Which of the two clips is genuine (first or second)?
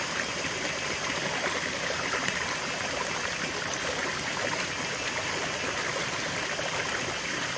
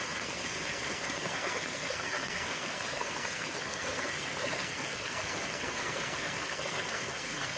first